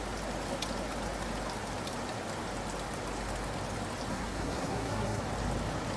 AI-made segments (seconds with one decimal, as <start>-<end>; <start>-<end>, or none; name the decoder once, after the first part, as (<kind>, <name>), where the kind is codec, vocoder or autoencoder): 4.1-5.2 (codec, SNAC)